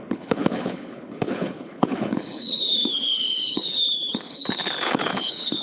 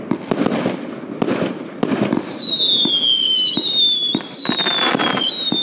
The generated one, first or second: first